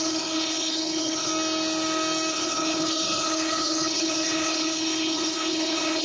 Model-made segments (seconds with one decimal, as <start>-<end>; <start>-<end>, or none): 0.0-1.3; 2.3-6.0